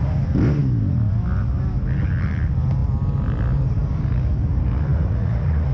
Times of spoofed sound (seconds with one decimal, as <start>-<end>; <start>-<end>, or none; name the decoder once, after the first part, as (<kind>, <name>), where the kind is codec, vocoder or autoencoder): 4.9-5.7 (vocoder, Vocos)